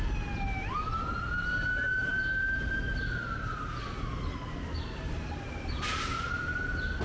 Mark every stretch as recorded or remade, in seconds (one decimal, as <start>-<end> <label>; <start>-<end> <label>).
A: 0.0-7.0 recorded